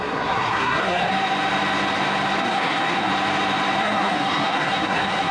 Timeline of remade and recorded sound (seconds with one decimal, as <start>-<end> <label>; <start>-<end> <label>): 0.0-1.1 remade; 1.1-2.4 recorded; 2.4-3.1 remade; 3.1-3.8 recorded; 3.8-5.3 remade